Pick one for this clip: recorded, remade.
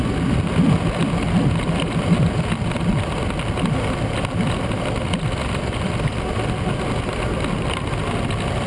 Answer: recorded